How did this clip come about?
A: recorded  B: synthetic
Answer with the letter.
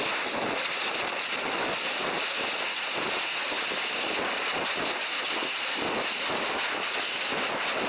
A